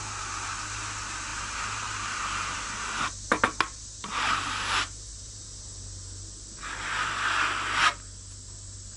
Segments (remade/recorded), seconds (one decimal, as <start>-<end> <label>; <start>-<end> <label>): 0.0-1.3 recorded; 1.3-5.6 remade; 5.6-9.0 recorded